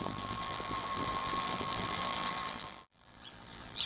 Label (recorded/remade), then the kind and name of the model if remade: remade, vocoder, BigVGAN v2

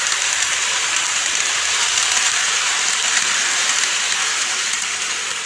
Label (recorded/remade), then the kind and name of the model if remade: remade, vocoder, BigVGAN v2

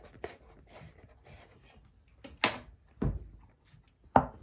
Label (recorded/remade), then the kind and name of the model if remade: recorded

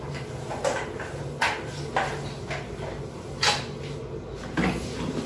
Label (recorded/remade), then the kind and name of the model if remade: recorded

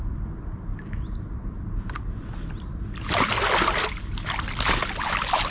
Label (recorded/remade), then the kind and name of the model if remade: recorded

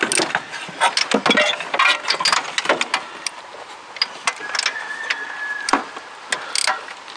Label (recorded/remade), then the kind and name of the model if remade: recorded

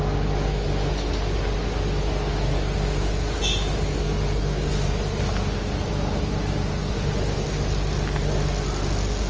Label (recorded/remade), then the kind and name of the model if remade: recorded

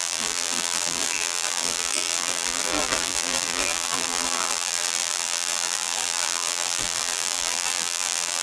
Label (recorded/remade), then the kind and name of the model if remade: remade, vocoder, BigVGAN v2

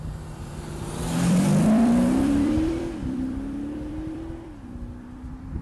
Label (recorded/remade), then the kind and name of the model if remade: remade, vocoder, BigVGAN v2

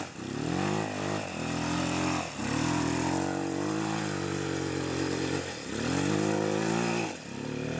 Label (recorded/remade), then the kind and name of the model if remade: recorded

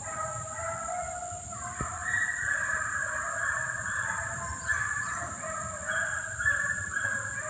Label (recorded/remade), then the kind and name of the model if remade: recorded